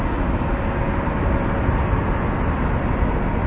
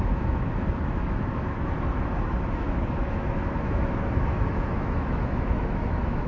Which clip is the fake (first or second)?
second